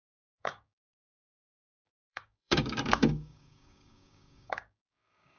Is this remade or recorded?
remade